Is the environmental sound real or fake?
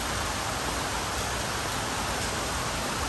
real